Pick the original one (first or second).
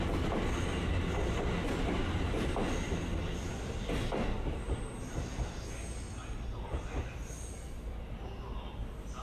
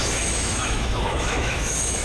first